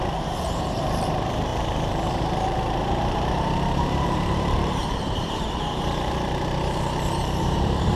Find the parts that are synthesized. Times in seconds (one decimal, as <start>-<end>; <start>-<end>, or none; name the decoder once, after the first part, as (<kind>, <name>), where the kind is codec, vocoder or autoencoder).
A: 0.0-8.0 (vocoder, BigVGAN v2)